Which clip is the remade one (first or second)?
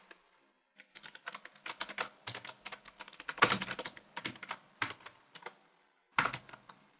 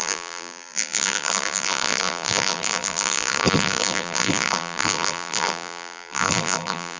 second